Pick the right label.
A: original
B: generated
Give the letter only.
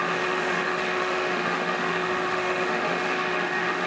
B